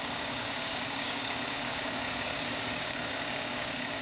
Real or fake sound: fake